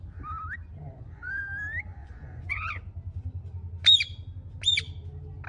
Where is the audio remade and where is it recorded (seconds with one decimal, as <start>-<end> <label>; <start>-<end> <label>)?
0.0-0.8 recorded; 0.8-1.4 remade; 1.4-2.0 recorded; 2.0-2.6 remade; 2.6-5.5 recorded